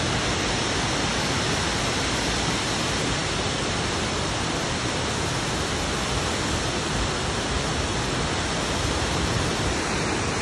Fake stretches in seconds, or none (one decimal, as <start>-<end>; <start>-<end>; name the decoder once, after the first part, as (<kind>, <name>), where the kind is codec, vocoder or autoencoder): none